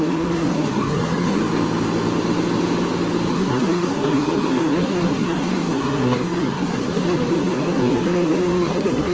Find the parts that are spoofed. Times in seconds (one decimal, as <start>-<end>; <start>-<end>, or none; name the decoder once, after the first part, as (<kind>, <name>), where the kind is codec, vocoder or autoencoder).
0.0-1.4 (codec, SNAC); 3.3-9.1